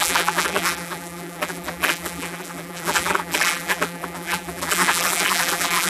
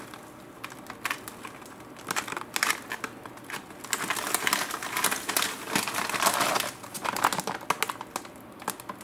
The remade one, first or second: first